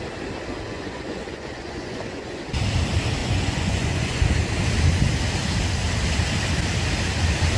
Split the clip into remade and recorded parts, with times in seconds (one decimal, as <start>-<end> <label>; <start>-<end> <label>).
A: 0.0-0.7 recorded; 0.7-2.4 remade; 2.4-3.2 recorded; 3.2-4.2 remade; 4.2-7.6 recorded